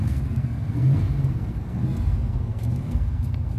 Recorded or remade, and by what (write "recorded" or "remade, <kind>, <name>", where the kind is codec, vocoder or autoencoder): remade, codec, SNAC